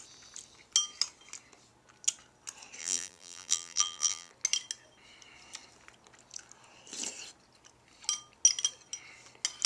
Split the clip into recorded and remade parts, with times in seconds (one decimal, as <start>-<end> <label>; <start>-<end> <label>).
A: 0.0-2.8 recorded; 2.8-4.3 remade; 4.3-9.7 recorded